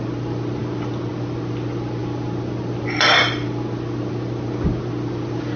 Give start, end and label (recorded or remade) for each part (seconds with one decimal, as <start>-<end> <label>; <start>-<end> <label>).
0.0-5.6 recorded